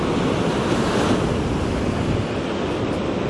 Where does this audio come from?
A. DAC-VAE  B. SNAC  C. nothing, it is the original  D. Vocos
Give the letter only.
C